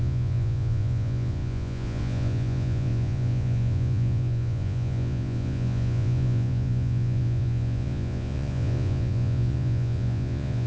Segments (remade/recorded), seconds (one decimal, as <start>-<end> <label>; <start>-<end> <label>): 0.0-10.7 remade